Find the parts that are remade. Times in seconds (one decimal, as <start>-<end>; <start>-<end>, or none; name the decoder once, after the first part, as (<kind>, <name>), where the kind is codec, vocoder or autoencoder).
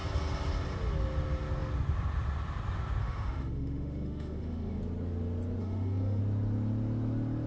3.0-4.8 (autoencoder, DAC-VAE); 5.6-6.2